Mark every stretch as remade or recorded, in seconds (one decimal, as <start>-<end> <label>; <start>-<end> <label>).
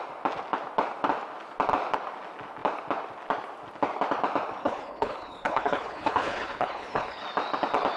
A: 0.0-4.6 recorded; 4.6-7.2 remade; 7.2-8.0 recorded